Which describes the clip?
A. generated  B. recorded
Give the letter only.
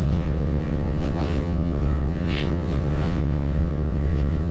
A